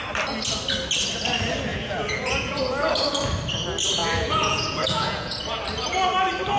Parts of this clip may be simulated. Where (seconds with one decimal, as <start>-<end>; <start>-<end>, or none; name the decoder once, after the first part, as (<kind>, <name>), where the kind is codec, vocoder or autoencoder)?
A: 1.7-2.5 (vocoder, Vocos); 4.0-5.4